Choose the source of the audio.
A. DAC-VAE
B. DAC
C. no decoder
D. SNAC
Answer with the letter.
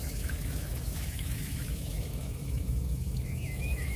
A